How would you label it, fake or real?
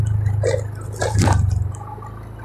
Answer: real